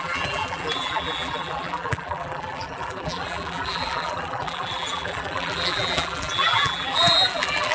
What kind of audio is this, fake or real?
fake